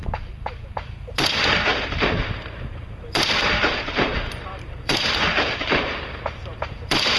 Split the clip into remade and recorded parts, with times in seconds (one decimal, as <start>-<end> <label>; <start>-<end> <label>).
0.0-7.2 remade